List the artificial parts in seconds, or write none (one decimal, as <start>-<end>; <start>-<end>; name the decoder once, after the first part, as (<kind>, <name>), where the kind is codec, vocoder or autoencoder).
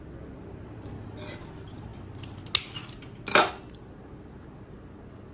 none